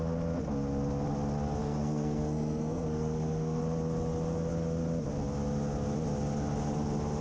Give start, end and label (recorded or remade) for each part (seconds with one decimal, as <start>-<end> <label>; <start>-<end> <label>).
0.0-1.6 recorded; 1.6-3.6 remade; 3.6-7.2 recorded